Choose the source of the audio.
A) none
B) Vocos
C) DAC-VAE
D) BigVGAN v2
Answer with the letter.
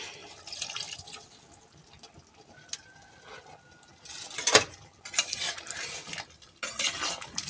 A